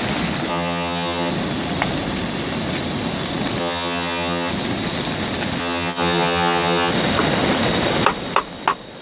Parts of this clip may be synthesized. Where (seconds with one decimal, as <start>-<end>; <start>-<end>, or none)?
0.5-1.3; 3.6-4.5; 5.6-6.9